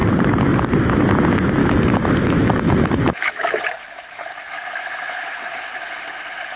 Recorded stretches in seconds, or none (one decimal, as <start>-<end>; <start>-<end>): 0.0-1.6; 5.6-6.6